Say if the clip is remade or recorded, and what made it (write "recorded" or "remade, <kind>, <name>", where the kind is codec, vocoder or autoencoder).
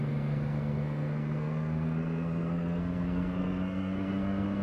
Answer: remade, codec, SNAC